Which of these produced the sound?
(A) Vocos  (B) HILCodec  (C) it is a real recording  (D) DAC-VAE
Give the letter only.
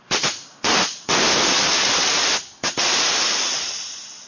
C